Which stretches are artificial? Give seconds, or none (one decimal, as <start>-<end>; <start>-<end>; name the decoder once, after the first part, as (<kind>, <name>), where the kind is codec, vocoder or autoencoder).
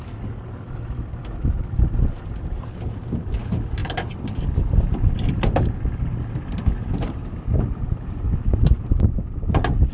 none